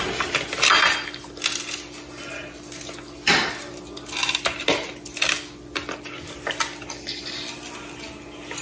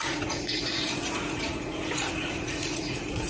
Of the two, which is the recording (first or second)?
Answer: first